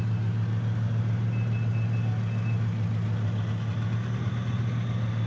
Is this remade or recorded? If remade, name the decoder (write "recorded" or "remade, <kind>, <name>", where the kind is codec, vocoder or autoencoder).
recorded